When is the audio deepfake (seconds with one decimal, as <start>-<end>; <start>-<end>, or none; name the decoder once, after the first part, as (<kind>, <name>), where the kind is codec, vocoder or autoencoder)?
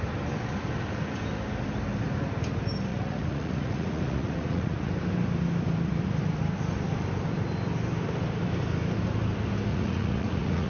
2.9-4.9 (vocoder, Vocos); 9.7-10.7